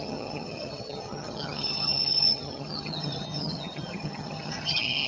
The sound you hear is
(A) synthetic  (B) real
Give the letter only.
A